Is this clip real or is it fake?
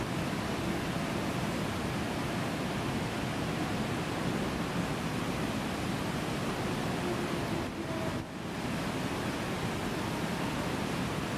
real